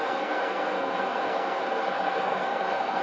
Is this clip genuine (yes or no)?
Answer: no